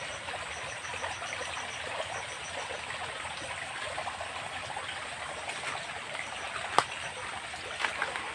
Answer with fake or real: real